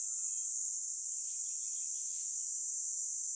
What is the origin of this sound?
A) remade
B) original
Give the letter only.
B